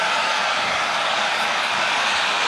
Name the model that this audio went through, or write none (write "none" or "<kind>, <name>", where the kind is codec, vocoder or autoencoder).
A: codec, DAC